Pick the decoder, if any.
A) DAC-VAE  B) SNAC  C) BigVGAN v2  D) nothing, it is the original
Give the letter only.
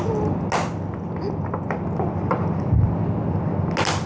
D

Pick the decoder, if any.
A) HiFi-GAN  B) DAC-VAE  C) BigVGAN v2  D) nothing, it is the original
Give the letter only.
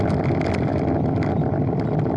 D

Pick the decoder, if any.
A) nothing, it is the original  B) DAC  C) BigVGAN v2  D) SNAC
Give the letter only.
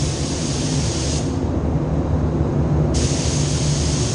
A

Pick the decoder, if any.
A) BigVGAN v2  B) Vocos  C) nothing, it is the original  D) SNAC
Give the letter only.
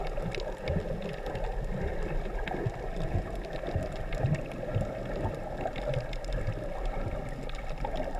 C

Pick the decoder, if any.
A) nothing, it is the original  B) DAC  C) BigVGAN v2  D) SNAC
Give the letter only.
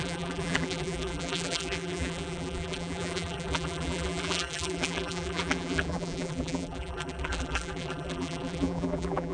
C